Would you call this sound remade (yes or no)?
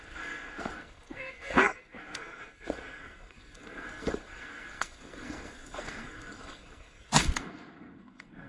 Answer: yes